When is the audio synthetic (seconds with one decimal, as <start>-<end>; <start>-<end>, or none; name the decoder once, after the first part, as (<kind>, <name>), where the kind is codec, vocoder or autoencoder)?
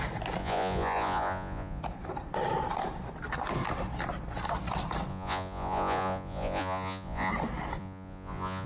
0.4-1.8 (vocoder, Vocos); 5.1-7.3; 7.8-8.7